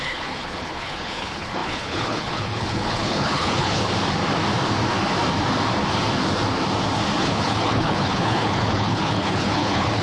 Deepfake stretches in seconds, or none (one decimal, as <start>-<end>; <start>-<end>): 0.0-3.8; 7.2-10.0